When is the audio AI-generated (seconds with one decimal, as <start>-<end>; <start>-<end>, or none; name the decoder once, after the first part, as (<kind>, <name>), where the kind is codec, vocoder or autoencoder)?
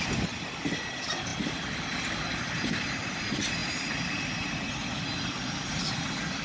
none